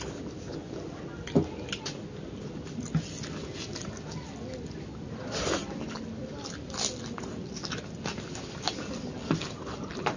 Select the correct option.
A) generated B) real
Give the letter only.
B